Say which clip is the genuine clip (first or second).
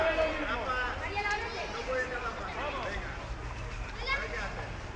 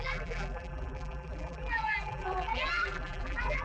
first